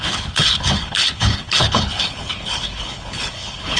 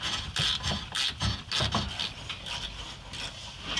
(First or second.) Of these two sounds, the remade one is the first